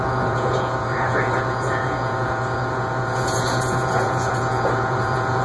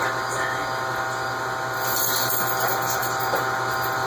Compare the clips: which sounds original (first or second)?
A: second